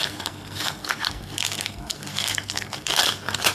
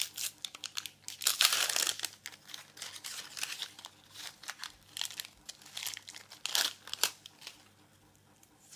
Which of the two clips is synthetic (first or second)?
first